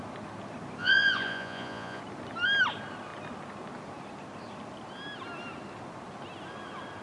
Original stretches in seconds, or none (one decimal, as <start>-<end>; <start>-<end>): 0.0-0.8; 2.0-7.0